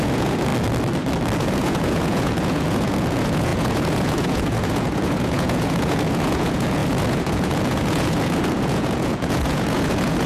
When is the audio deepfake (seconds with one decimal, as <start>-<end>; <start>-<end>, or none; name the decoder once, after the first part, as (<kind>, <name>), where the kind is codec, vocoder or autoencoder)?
0.0-0.5 (vocoder, Vocos); 1.4-10.3